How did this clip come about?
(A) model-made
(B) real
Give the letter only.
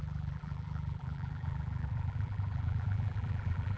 A